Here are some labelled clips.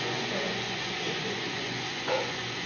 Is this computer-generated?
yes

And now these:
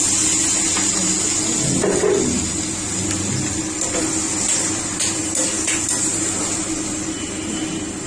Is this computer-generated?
no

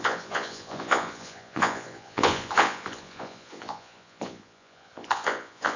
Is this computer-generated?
yes